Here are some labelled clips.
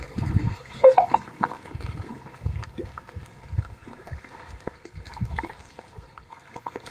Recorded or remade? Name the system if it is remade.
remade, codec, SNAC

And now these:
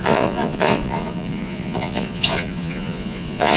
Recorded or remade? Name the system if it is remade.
remade, vocoder, Vocos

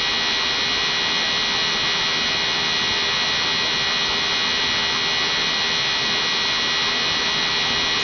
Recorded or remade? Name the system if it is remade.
recorded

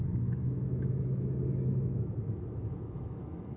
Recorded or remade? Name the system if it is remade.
remade, autoencoder, DAC-VAE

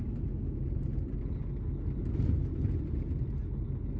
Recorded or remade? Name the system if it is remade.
recorded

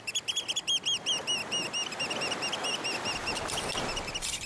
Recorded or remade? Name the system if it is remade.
recorded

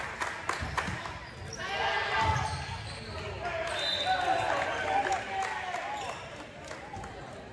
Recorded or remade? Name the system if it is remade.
recorded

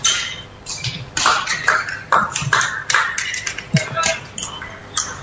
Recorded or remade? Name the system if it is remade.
recorded